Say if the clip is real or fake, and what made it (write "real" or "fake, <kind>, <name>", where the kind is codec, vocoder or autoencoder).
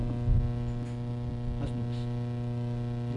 real